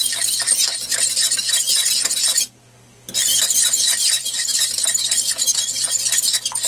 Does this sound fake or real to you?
real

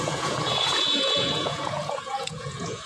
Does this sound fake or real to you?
fake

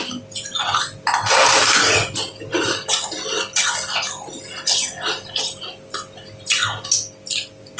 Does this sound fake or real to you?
real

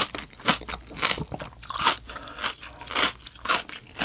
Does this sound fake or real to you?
real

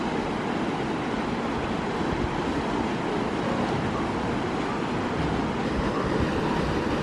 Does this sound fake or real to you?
real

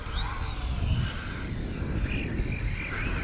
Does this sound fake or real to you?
real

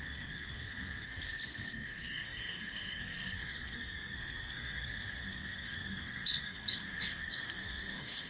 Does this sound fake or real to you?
fake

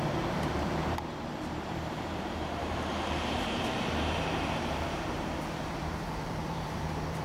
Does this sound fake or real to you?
fake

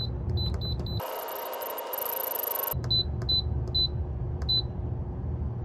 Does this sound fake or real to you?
real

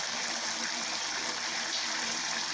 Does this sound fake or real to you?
real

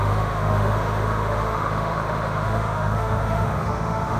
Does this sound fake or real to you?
fake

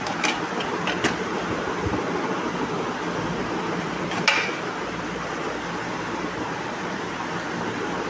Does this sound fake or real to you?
real